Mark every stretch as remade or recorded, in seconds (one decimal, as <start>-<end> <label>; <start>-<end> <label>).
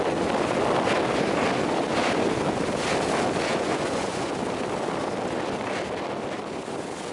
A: 0.0-3.5 recorded; 3.5-4.4 remade; 4.4-7.1 recorded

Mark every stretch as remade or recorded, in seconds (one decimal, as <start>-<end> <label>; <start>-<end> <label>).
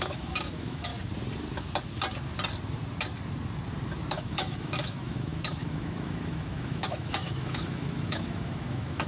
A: 0.0-0.9 remade; 0.9-4.1 recorded; 4.1-9.1 remade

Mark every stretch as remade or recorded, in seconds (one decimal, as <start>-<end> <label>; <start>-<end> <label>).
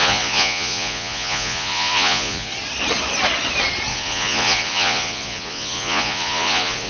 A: 0.0-2.5 remade; 2.5-3.9 recorded; 3.9-6.9 remade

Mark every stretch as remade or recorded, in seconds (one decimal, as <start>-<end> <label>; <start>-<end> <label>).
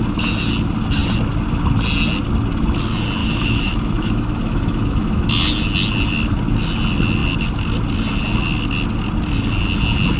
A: 0.0-3.2 recorded; 3.2-5.3 remade; 5.3-10.2 recorded